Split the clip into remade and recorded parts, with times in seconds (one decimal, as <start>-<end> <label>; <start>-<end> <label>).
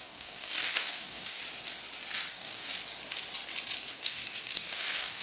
0.0-1.4 remade; 1.4-2.3 recorded; 2.3-2.7 remade; 2.7-3.9 recorded; 3.9-5.2 remade